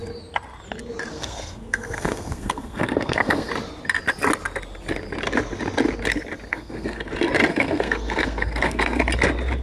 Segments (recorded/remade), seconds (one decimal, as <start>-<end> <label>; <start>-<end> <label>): 0.0-1.1 recorded; 1.1-3.5 remade; 3.5-6.5 recorded; 6.5-7.1 remade; 7.1-7.5 recorded; 7.5-9.0 remade; 9.0-9.6 recorded